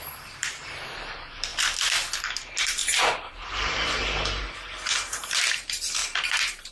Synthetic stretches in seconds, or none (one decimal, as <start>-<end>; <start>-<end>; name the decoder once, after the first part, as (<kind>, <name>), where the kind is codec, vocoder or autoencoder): 0.0-1.5 (vocoder, BigVGAN v2); 2.2-6.7